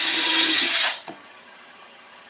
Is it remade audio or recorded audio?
remade